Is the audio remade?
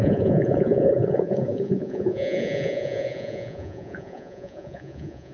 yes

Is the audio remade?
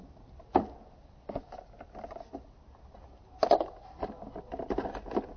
no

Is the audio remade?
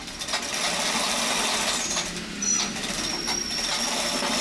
no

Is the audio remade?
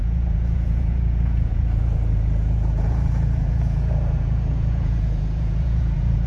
yes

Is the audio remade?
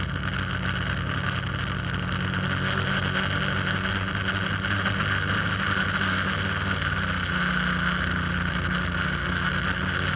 no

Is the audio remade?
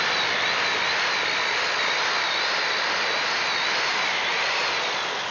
no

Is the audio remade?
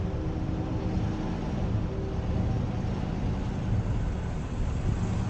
no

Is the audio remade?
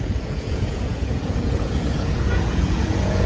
yes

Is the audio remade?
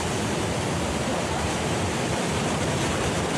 no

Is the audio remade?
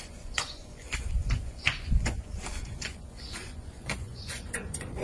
yes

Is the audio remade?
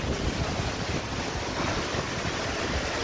no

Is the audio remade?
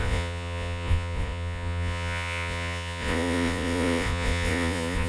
yes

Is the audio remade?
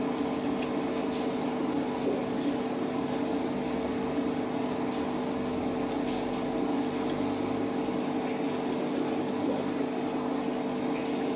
no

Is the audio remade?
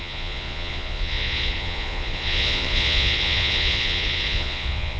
yes